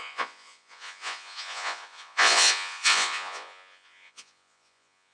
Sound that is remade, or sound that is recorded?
remade